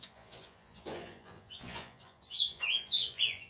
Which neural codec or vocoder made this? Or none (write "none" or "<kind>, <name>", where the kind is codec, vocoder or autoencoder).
vocoder, Vocos